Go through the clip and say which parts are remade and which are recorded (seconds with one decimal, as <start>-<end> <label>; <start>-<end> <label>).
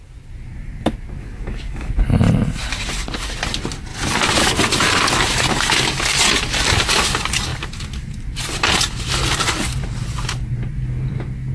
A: 0.0-1.2 recorded; 1.2-1.9 remade; 1.9-11.5 recorded